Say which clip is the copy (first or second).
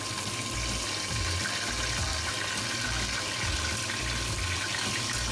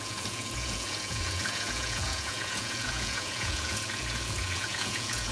second